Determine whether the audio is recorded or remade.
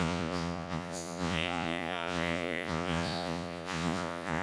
remade